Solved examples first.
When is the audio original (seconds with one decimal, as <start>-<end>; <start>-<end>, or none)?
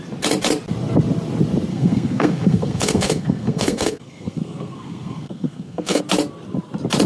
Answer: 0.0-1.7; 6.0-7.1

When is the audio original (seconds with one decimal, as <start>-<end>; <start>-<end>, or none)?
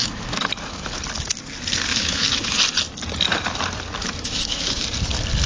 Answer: 1.0-1.9; 2.6-4.0; 4.8-5.5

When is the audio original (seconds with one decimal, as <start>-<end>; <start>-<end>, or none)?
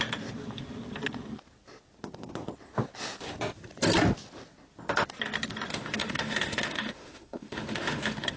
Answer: 0.0-5.7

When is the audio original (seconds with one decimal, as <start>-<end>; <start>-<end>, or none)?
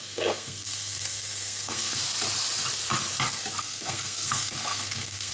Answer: 2.0-3.6